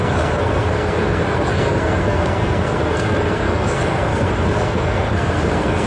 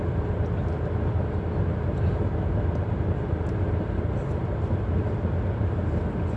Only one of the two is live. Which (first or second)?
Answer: second